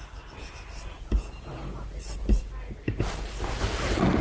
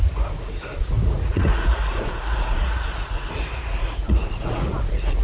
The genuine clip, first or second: first